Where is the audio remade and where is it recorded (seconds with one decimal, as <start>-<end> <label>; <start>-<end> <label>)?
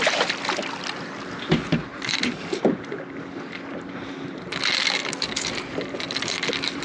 0.0-1.9 recorded; 1.9-2.6 remade; 2.6-6.8 recorded